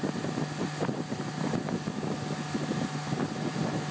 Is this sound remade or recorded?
recorded